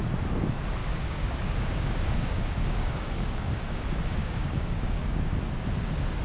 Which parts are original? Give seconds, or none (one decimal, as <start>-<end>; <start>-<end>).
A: 0.0-0.8; 3.8-4.2; 5.3-6.2